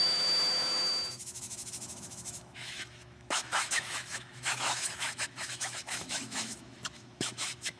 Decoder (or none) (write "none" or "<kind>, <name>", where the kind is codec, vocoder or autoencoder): autoencoder, DAC-VAE